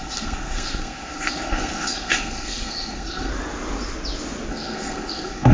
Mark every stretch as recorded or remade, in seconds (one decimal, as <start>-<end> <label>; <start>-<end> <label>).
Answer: 0.0-3.3 remade; 3.3-4.5 recorded; 4.5-5.5 remade